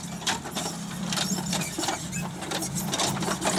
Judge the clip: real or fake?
real